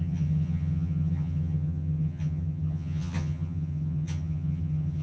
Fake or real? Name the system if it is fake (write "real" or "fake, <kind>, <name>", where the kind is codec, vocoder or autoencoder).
fake, vocoder, HiFi-GAN